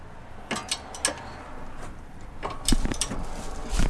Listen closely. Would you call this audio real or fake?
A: real